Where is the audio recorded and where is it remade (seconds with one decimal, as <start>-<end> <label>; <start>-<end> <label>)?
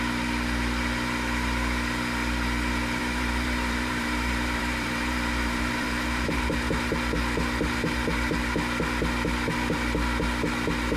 0.0-3.0 recorded; 3.0-6.4 remade; 6.4-11.0 recorded